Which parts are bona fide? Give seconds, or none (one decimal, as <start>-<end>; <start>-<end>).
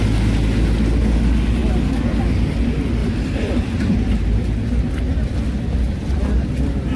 0.0-3.0; 4.2-5.1; 6.5-7.0